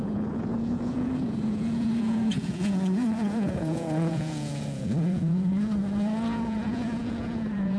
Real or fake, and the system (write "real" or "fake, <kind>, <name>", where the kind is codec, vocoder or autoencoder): fake, vocoder, Vocos